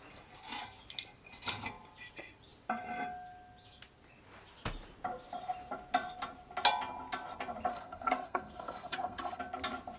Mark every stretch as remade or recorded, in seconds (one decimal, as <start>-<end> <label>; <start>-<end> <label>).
0.0-7.7 recorded; 7.7-9.4 remade; 9.4-10.0 recorded